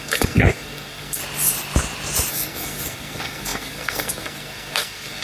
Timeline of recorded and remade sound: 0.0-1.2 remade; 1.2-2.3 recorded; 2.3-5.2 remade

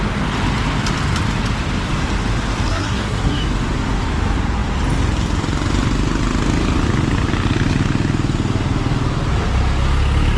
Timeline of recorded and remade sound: 0.0-2.7 recorded; 2.7-3.4 remade; 3.4-10.4 recorded

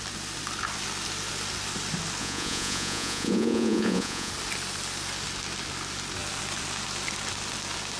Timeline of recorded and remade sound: 0.0-2.2 recorded; 2.2-4.3 remade; 4.3-8.0 recorded

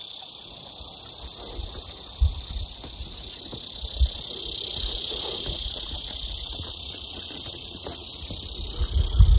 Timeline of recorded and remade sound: 0.0-4.7 recorded; 4.7-8.3 remade; 8.3-9.4 recorded

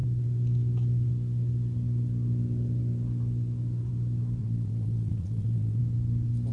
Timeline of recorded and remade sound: 0.0-4.4 recorded; 4.4-5.8 remade; 5.8-6.5 recorded

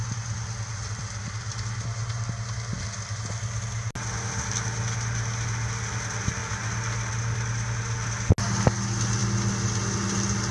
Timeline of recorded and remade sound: 0.0-10.5 recorded

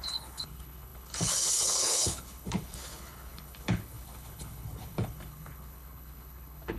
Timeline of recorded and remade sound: 0.0-6.8 remade

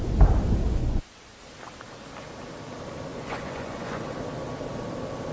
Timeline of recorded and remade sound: 0.0-0.8 recorded; 0.8-1.4 remade; 1.4-3.1 recorded; 3.1-4.0 remade; 4.0-5.3 recorded